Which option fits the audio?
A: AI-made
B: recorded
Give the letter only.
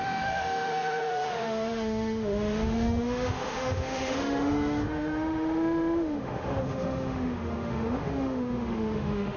A